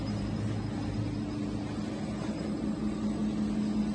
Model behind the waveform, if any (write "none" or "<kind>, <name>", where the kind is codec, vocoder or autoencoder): none